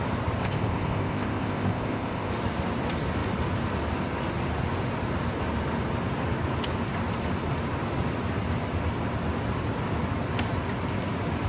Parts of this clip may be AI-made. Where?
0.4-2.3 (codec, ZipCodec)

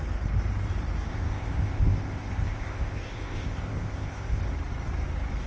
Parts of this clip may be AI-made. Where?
1.1-4.4 (codec, ZipCodec)

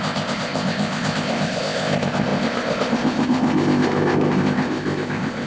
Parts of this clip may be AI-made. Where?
0.0-5.5 (codec, ZipCodec)

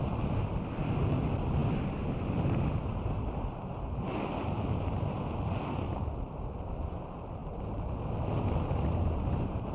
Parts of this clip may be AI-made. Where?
none